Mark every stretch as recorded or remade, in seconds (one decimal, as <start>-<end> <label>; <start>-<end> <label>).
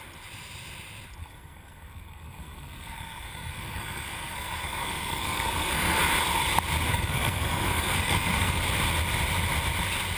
0.0-1.2 recorded; 1.2-6.0 remade; 6.0-6.9 recorded; 6.9-8.6 remade; 8.6-10.2 recorded